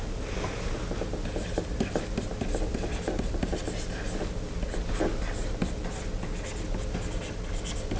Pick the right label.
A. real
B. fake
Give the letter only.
A